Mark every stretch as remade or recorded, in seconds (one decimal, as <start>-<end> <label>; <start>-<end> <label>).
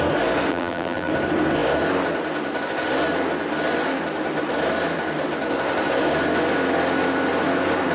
0.0-0.5 recorded; 0.5-1.1 remade; 1.1-7.9 recorded